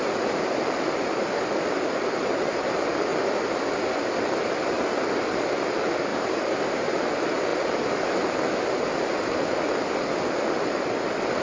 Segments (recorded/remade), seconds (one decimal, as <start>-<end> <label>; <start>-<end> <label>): 0.0-6.1 recorded; 6.1-6.9 remade; 6.9-11.4 recorded